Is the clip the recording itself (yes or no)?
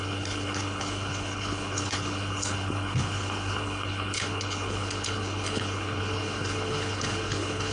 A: no